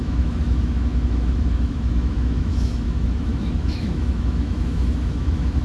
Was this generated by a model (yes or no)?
yes